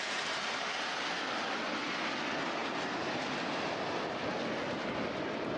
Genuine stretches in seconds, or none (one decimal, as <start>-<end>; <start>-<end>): 0.0-5.6